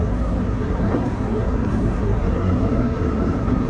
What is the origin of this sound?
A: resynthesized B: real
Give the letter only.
A